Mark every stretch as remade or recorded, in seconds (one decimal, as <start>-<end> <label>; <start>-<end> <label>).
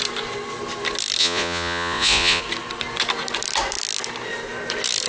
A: 0.0-1.2 recorded; 1.2-2.4 remade; 2.4-5.1 recorded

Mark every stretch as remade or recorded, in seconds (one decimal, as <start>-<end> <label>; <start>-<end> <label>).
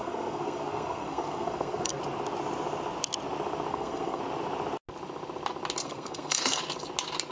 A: 0.0-2.0 remade; 2.0-3.7 recorded; 3.7-4.2 remade; 4.2-5.8 recorded; 5.8-6.6 remade; 6.6-7.3 recorded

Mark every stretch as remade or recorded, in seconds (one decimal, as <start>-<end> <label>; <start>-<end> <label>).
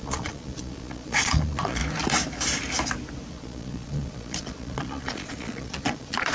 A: 0.0-1.8 remade; 1.8-3.3 recorded; 3.3-6.3 remade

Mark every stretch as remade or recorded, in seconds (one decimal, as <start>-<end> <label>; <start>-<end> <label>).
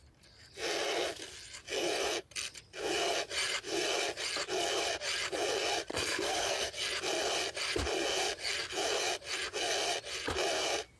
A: 0.0-5.9 recorded; 5.9-6.7 remade; 6.7-11.0 recorded